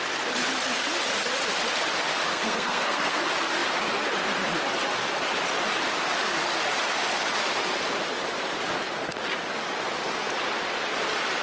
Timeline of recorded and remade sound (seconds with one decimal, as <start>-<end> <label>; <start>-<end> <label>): 0.0-2.3 recorded; 2.3-3.2 remade; 3.2-11.4 recorded